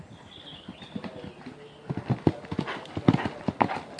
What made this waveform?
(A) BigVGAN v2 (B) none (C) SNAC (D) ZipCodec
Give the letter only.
B